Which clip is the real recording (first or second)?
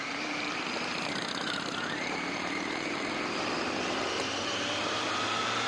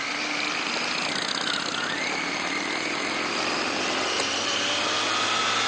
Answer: second